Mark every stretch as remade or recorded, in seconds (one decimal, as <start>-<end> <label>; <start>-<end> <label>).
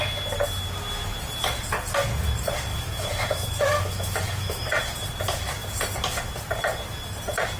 0.0-2.7 recorded; 2.7-4.7 remade; 4.7-7.6 recorded